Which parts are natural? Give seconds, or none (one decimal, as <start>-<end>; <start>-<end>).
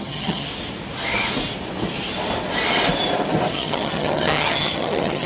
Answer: 0.5-3.5